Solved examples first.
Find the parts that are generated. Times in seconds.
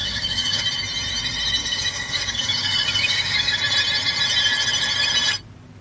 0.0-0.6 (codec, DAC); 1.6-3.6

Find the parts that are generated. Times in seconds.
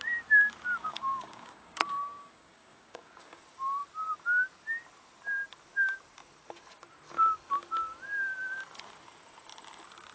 0.8-3.4 (codec, DAC)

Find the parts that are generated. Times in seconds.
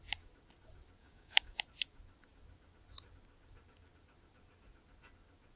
1.0-1.6 (codec, DAC)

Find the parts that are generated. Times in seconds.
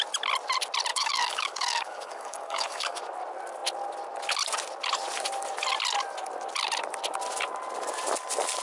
0.9-3.0 (codec, DAC)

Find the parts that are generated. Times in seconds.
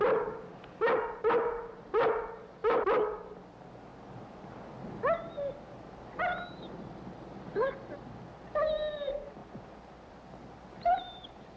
none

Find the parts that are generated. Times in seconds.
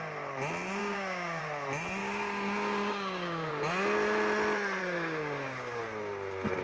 0.8-1.4 (codec, DAC); 2.0-3.5; 4.8-5.8